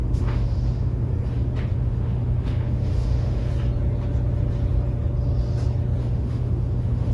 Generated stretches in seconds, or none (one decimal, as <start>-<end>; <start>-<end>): 0.0-1.1; 1.7-3.5; 6.0-7.1